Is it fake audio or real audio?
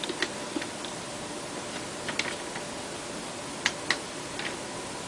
real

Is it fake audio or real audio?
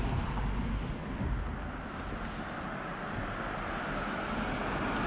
real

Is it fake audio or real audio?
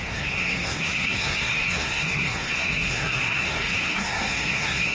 fake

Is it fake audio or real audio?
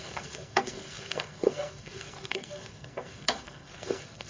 fake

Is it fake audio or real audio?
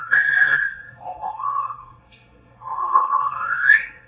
fake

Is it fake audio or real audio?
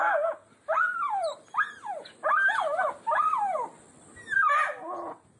real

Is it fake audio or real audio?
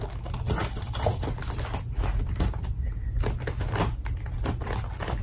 real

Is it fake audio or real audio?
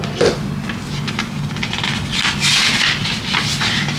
real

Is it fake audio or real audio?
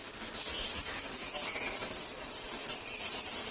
real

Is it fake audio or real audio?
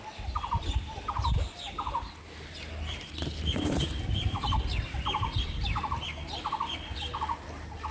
real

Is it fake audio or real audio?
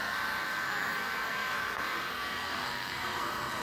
fake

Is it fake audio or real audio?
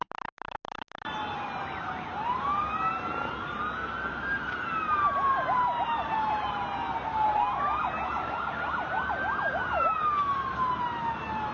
real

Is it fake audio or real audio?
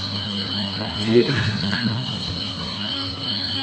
fake